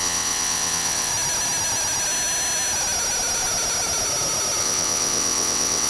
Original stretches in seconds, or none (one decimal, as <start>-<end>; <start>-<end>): 1.1-4.6